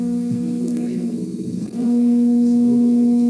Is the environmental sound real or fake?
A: fake